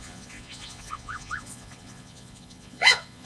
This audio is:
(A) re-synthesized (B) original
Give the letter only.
A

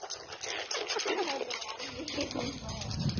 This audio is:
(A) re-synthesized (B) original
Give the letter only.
B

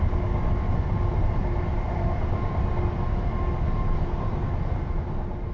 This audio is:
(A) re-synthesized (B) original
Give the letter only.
B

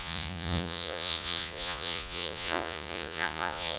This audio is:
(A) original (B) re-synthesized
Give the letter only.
B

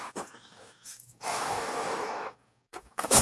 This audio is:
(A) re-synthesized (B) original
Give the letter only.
A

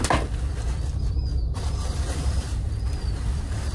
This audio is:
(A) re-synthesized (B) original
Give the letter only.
B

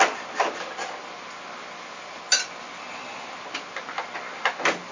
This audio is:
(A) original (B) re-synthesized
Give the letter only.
A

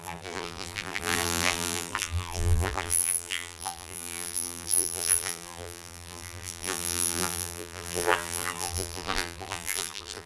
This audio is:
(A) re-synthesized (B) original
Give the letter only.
A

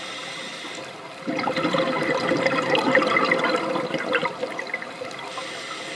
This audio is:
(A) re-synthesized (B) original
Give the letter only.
B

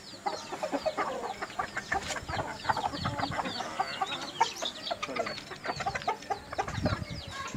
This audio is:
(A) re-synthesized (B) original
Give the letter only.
B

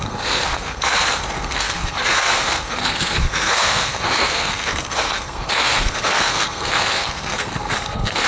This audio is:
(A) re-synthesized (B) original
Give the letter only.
A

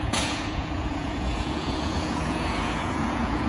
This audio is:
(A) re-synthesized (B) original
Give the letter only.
A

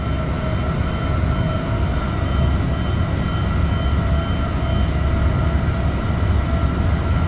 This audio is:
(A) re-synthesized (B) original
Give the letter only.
B